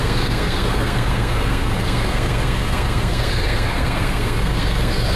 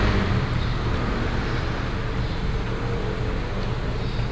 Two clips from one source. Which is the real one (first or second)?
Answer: second